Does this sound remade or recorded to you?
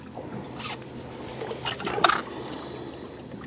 recorded